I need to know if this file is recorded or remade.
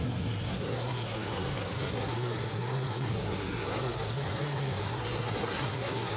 remade